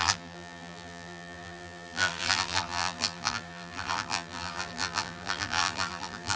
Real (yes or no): no